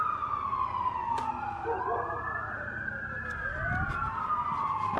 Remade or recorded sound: recorded